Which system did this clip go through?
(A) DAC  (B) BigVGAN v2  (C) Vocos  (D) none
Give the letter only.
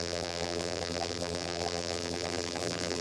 B